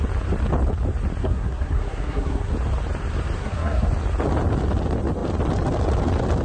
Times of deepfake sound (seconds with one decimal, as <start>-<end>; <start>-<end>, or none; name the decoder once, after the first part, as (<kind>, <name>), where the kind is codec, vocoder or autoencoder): 1.2-2.5 (codec, SNAC); 3.4-3.9